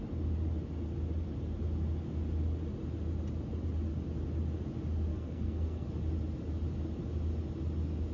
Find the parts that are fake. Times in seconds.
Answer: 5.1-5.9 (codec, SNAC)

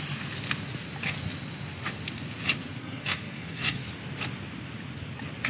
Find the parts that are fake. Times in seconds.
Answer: 2.8-3.9 (codec, SNAC)

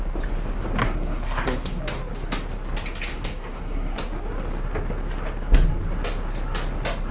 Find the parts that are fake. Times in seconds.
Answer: 0.8-1.8 (codec, SNAC); 3.1-4.0

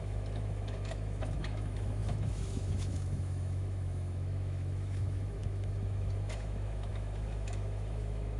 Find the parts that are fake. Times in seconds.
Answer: 0.0-8.4 (autoencoder, DAC-VAE)

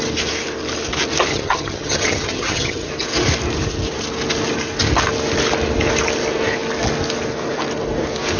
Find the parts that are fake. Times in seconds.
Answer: 1.3-2.9 (vocoder, HiFi-GAN)

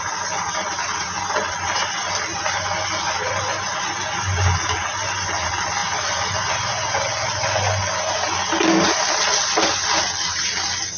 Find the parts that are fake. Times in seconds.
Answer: none

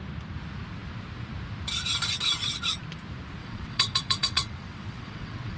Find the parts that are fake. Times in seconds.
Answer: 3.4-5.6 (vocoder, WaveNeXt)

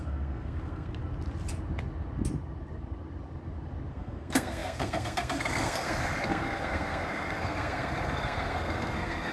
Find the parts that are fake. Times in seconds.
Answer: 0.0-1.0 (codec, SNAC); 3.9-9.3